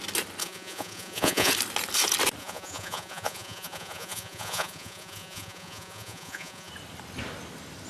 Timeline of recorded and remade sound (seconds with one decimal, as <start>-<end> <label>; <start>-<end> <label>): 0.0-0.4 recorded; 0.4-1.5 remade; 1.5-2.4 recorded; 2.4-6.7 remade; 6.7-7.9 recorded